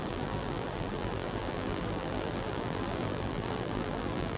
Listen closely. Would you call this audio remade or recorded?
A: remade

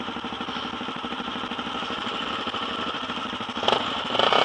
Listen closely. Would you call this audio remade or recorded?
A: recorded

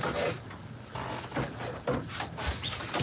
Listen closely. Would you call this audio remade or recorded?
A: recorded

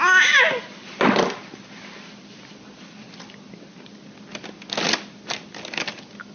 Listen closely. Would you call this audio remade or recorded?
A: recorded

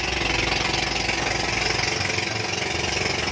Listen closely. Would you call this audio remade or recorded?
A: recorded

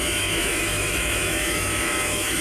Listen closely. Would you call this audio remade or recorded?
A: remade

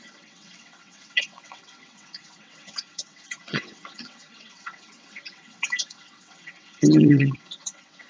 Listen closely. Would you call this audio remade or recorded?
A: remade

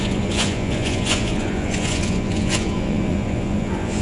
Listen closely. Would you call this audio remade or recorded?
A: remade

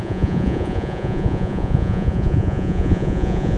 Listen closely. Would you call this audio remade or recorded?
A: remade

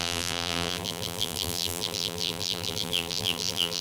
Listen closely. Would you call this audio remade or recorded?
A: remade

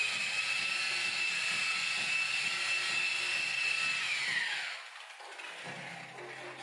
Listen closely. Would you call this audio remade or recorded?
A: recorded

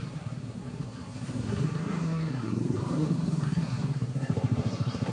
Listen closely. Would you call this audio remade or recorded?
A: remade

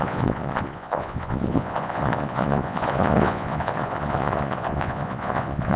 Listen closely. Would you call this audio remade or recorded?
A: remade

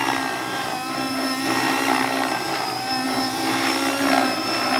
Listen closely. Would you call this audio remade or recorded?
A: recorded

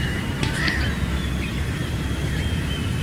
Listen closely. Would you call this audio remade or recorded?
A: recorded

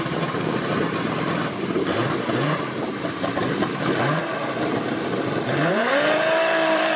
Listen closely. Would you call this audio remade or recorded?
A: remade